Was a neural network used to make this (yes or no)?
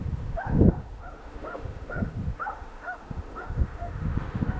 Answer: yes